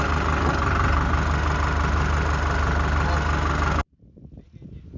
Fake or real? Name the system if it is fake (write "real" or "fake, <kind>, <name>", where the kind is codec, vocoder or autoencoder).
real